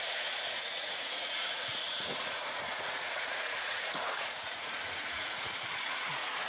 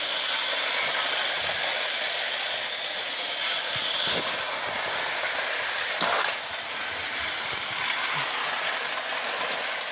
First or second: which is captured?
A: second